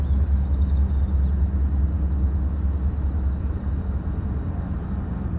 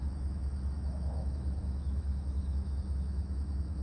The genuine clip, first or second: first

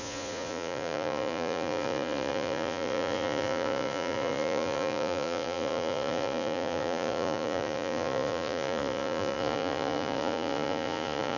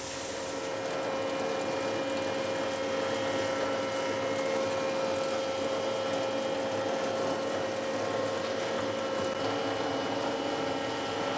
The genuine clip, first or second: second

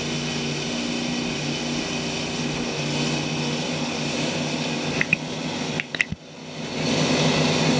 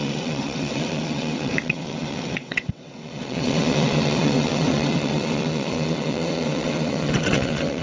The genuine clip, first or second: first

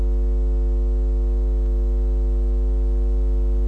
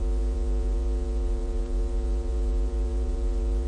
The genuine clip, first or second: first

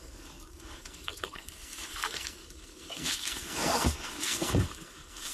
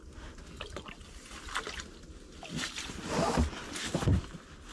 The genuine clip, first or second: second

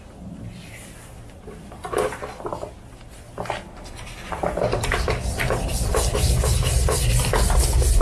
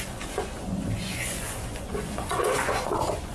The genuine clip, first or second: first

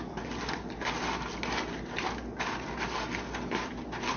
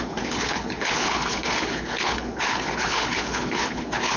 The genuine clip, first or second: first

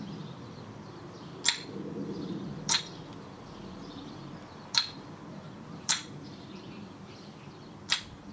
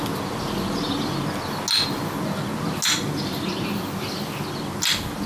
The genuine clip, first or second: second